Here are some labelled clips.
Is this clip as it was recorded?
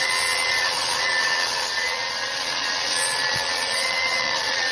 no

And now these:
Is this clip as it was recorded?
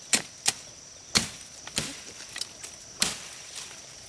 yes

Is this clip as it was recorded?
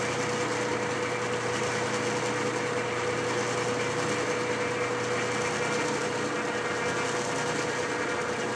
yes